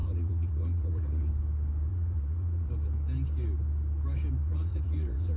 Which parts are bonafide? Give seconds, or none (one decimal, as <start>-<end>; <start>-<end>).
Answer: 1.3-1.9; 2.7-4.4